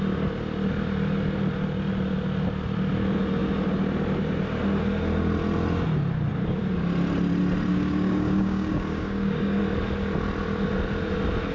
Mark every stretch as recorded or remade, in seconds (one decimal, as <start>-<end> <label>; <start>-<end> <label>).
0.0-7.7 recorded; 7.7-9.6 remade; 9.6-11.5 recorded